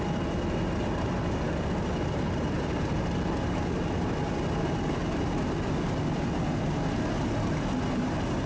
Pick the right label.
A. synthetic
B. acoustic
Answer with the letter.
B